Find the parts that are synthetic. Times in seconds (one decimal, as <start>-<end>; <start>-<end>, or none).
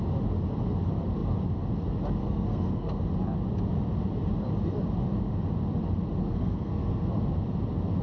2.2-3.0; 6.2-7.1